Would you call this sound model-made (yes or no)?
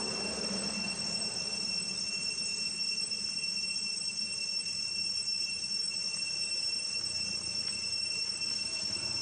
no